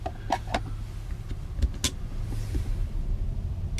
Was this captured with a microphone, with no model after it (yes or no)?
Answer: yes